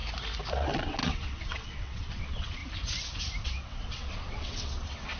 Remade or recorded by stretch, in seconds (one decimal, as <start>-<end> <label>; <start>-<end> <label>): 0.0-0.5 recorded; 0.5-2.6 remade; 2.6-3.4 recorded; 3.4-5.2 remade